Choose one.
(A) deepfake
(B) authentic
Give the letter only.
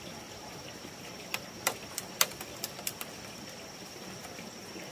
B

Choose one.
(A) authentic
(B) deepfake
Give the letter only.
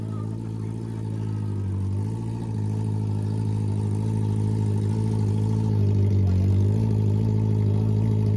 A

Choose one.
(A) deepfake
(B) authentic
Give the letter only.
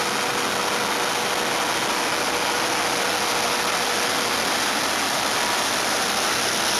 B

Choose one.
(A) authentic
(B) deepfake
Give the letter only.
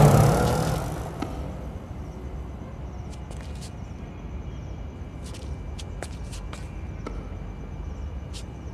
A